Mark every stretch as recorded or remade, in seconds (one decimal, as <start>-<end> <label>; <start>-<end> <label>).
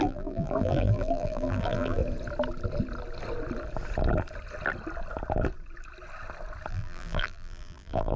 0.0-2.0 remade; 2.0-6.7 recorded; 6.7-8.2 remade